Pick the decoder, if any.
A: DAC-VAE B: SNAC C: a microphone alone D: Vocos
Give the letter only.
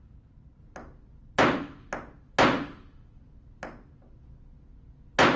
C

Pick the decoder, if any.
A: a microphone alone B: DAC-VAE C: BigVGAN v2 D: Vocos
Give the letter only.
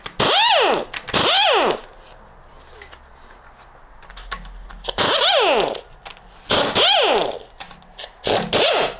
A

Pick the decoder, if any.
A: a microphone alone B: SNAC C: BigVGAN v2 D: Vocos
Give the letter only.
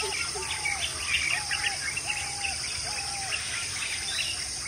A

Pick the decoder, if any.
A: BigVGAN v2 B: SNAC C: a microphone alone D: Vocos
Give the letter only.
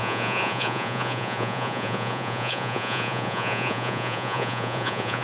D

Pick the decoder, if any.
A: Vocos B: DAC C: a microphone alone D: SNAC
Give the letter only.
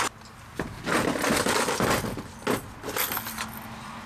C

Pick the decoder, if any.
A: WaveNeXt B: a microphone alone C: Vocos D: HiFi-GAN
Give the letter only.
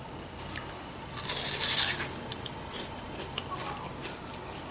B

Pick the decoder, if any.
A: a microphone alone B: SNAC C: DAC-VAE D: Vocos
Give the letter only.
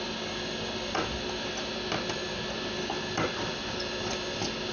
A